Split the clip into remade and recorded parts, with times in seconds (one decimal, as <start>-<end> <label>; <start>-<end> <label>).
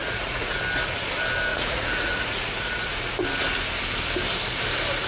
0.0-0.6 remade; 0.6-1.5 recorded; 1.5-3.0 remade; 3.0-5.1 recorded